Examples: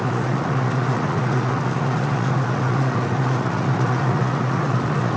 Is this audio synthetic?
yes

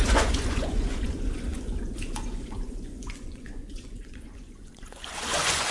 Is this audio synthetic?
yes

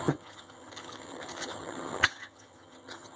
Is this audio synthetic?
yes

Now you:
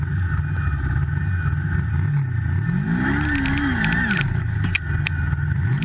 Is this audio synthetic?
no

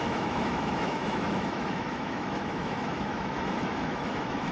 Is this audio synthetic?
yes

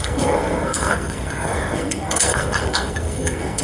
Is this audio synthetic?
yes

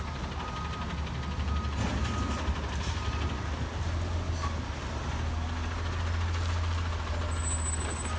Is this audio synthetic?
no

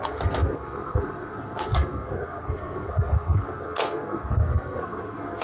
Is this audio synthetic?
yes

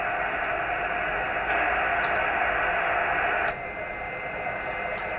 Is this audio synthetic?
no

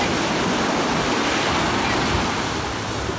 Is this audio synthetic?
no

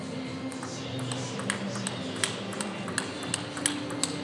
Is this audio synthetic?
no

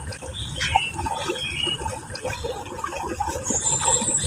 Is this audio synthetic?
yes